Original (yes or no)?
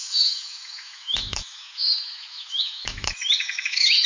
no